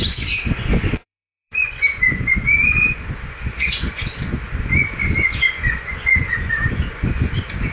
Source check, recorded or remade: remade